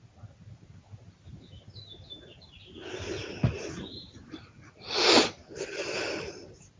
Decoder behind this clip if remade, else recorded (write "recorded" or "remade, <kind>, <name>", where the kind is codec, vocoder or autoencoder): recorded